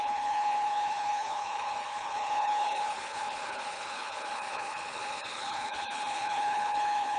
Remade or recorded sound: remade